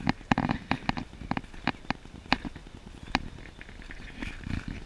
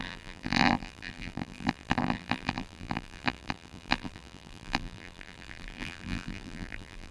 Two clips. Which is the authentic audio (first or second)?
first